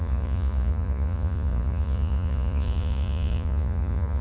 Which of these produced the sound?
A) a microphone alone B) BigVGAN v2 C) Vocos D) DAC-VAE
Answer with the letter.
C